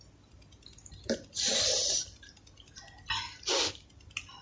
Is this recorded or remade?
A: recorded